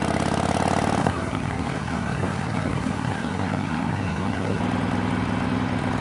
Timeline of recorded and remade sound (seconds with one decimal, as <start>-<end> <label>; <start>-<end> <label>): 0.0-1.0 recorded; 1.0-4.6 remade; 4.6-6.0 recorded

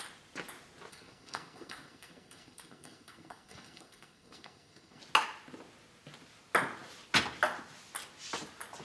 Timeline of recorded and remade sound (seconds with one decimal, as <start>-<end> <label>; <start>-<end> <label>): 0.0-0.9 recorded; 0.9-5.0 remade; 5.0-8.8 recorded

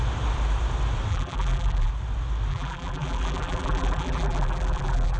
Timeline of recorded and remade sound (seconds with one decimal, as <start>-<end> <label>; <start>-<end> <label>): 0.0-1.1 recorded; 1.1-1.9 remade; 1.9-2.5 recorded; 2.5-5.2 remade

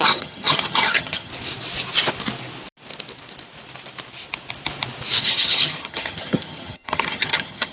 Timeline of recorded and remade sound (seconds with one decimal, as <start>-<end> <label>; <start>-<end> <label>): 0.0-1.3 remade; 1.3-5.2 recorded; 5.2-7.7 remade